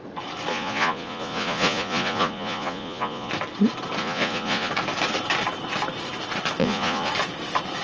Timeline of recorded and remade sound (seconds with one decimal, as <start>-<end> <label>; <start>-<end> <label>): 0.0-0.5 recorded; 0.5-3.3 remade; 3.3-4.0 recorded; 4.0-4.7 remade; 4.7-6.6 recorded; 6.6-7.1 remade; 7.1-7.8 recorded